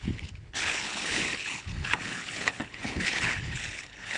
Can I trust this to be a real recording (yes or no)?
no